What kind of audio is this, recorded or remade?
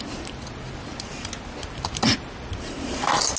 recorded